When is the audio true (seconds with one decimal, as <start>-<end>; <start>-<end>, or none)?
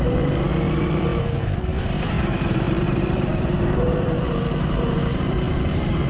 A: none